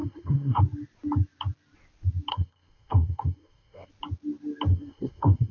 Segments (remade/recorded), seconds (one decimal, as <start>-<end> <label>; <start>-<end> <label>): 0.0-0.6 remade; 0.6-2.3 recorded; 2.3-3.9 remade; 3.9-4.7 recorded; 4.7-5.5 remade